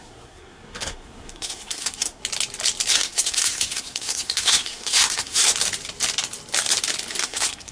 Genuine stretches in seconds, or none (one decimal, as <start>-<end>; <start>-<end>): 2.2-2.9; 5.5-7.2